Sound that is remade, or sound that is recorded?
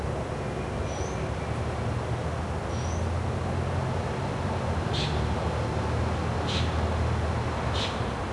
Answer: recorded